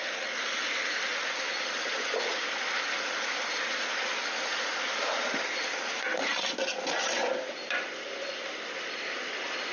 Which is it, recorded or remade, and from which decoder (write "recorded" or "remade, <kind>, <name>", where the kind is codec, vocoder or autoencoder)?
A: recorded